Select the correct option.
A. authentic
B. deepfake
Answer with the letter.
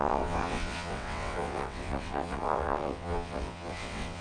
B